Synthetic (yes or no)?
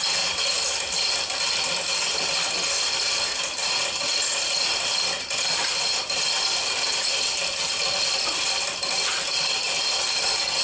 no